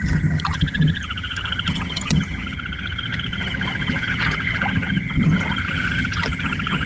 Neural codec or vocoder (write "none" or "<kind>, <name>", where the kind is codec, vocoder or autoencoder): vocoder, HiFi-GAN